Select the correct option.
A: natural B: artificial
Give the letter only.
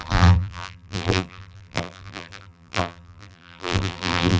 B